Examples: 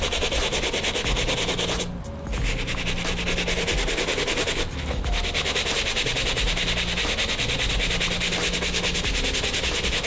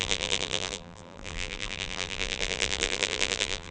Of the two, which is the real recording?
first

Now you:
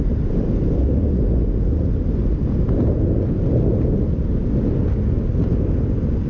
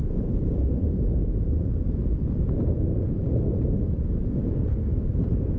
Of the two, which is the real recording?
first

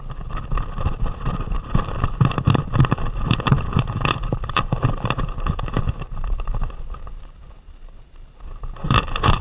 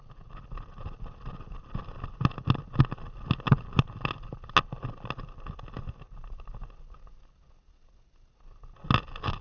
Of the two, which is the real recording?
second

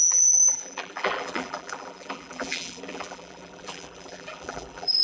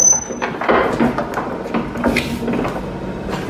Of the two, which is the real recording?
second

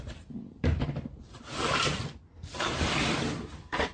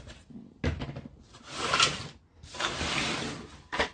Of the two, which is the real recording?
second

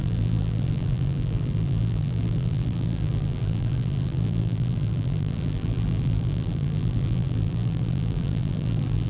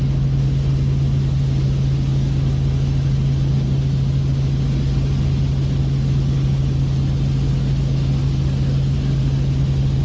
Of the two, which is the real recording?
second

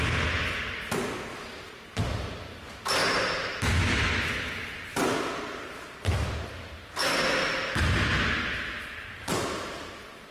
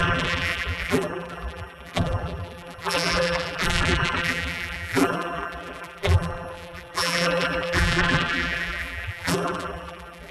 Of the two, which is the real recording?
first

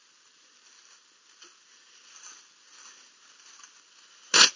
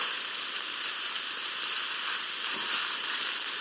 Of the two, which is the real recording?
first